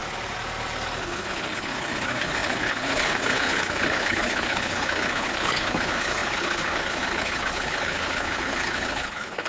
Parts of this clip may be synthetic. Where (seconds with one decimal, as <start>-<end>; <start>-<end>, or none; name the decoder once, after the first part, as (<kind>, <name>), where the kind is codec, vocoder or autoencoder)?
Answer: 1.0-9.5 (codec, HILCodec)